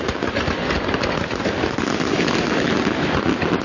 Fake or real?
real